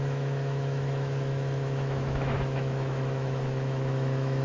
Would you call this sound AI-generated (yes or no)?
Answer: yes